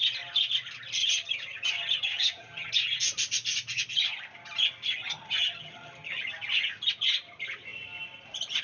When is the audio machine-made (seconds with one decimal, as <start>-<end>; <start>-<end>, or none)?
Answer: 1.0-2.7; 5.0-6.2